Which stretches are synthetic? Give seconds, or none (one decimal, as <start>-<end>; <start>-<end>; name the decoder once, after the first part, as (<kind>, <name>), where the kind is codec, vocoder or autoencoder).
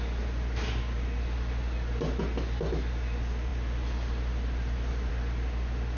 none